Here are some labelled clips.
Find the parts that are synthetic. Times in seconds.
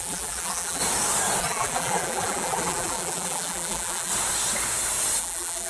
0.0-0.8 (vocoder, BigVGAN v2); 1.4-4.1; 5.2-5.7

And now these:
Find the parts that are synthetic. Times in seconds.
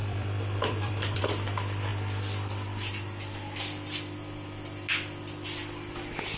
0.0-1.2 (vocoder, BigVGAN v2)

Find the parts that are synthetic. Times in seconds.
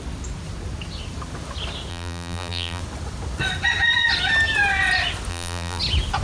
1.9-2.8 (vocoder, BigVGAN v2); 5.3-5.8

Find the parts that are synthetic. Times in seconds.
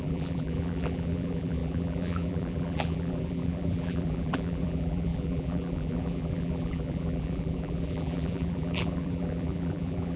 0.0-10.2 (vocoder, BigVGAN v2)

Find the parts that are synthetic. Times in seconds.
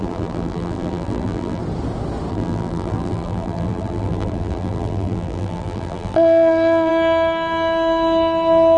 0.0-1.6 (vocoder, BigVGAN v2); 2.3-6.9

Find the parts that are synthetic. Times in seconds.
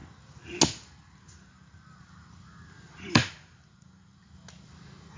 2.9-4.1 (vocoder, BigVGAN v2)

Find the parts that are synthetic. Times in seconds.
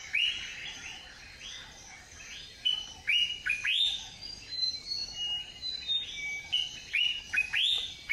none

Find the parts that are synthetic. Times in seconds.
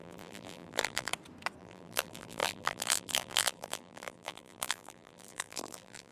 0.0-1.1 (vocoder, BigVGAN v2); 1.6-6.1